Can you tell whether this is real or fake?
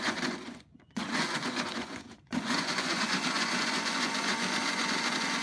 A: fake